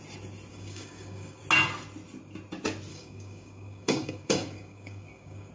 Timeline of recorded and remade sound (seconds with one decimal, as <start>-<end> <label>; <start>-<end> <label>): 0.0-0.5 recorded; 0.5-1.4 remade; 1.4-2.9 recorded; 2.9-5.5 remade